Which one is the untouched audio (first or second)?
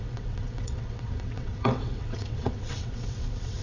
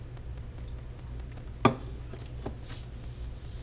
second